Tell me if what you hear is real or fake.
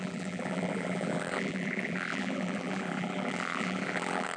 fake